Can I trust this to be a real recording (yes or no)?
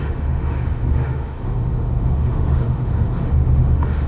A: no